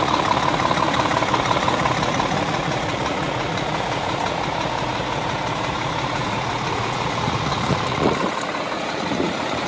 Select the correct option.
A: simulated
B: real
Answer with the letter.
A